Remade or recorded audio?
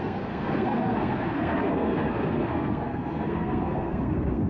remade